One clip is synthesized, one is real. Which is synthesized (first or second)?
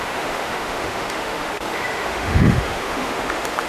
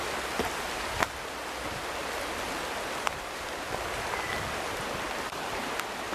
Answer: first